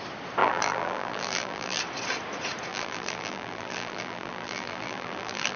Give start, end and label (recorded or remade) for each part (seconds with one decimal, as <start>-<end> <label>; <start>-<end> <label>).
0.0-0.4 recorded; 0.4-1.8 remade; 1.8-2.7 recorded; 2.7-5.6 remade